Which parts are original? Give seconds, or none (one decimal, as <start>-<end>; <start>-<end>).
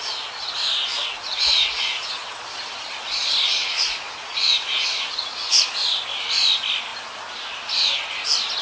0.0-0.8; 2.1-3.6; 5.6-8.6